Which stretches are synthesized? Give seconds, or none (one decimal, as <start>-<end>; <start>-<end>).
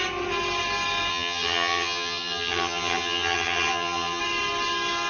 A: 1.1-4.2